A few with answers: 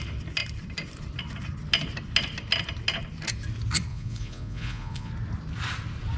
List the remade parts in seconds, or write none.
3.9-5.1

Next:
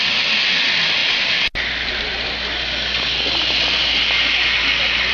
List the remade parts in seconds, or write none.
none

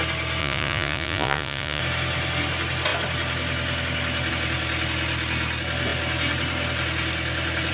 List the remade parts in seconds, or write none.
0.4-1.8

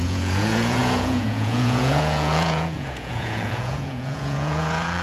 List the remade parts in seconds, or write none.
0.0-5.0